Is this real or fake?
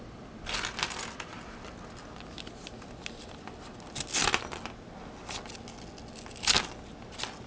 real